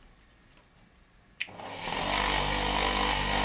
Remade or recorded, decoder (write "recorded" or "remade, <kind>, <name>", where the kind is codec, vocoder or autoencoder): recorded